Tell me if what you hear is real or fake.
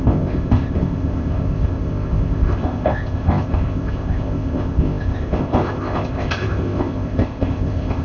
fake